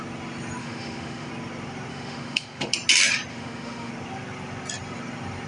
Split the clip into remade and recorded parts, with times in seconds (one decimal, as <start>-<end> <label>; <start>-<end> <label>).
0.0-0.6 recorded; 0.6-1.3 remade; 1.3-1.9 recorded; 1.9-2.7 remade; 2.7-3.3 recorded; 3.3-3.9 remade; 3.9-5.5 recorded